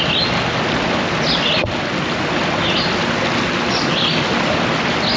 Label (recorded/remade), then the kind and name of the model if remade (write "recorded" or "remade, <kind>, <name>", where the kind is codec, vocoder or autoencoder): recorded